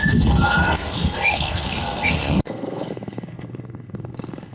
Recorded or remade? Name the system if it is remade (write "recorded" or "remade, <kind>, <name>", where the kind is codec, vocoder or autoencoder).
remade, codec, SNAC